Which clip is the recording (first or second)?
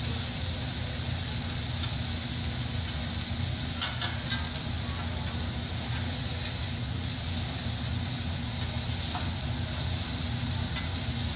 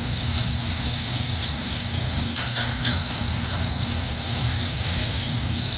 first